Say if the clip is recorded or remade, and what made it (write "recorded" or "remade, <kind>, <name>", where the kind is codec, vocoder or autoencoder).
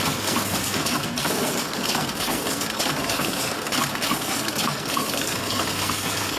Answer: remade, codec, SNAC